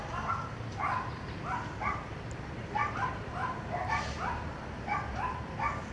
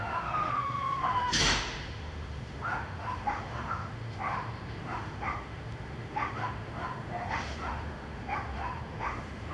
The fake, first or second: second